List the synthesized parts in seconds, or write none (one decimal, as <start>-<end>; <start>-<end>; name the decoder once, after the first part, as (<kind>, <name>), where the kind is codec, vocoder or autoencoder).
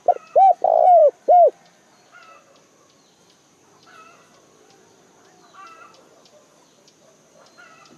none